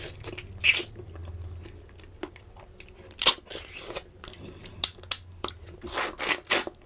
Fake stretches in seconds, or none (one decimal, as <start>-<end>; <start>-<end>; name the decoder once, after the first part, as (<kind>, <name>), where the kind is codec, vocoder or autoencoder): none